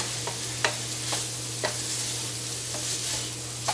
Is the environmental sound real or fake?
real